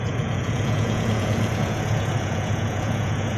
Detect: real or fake fake